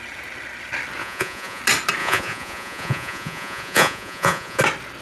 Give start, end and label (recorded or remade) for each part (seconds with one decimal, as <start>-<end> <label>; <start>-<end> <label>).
0.0-1.0 recorded; 1.0-1.6 remade; 1.6-2.0 recorded; 2.0-4.6 remade; 4.6-5.0 recorded